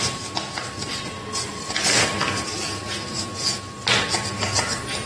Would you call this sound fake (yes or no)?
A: no